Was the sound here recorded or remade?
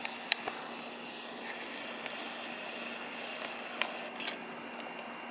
recorded